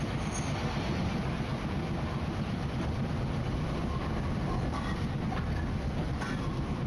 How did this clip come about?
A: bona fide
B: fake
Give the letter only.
A